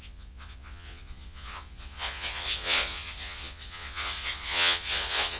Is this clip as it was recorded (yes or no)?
no